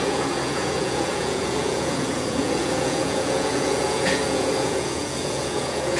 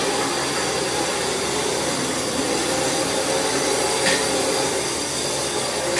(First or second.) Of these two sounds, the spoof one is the first